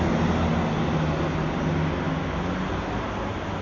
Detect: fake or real real